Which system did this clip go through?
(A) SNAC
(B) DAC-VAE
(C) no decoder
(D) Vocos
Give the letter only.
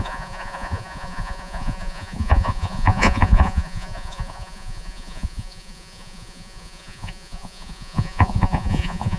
D